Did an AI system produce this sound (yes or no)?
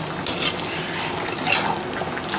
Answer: no